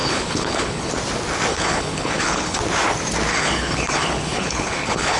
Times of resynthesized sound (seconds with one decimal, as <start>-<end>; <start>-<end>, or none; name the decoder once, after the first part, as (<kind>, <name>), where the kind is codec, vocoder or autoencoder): 0.0-0.9 (codec, HILCodec); 1.5-2.6; 3.3-5.2